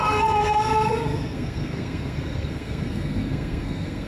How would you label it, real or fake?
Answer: fake